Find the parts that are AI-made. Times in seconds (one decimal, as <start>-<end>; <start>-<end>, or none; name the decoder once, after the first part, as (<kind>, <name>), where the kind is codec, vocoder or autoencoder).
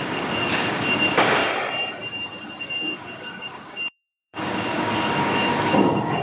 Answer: 0.0-1.4 (codec, DAC); 2.6-6.2